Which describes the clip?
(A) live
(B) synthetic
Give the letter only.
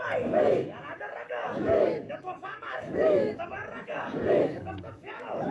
B